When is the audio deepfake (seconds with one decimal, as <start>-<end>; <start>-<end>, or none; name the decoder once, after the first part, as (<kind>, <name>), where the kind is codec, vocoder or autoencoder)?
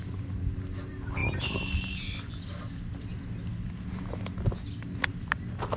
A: 1.2-2.1 (vocoder, BigVGAN v2)